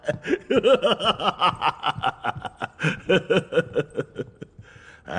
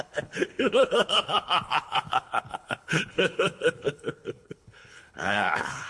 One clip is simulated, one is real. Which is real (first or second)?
first